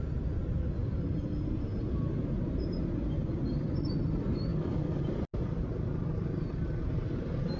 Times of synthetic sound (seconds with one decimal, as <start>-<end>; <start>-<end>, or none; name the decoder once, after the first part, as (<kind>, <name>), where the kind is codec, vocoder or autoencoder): 4.5-5.0 (codec, DAC)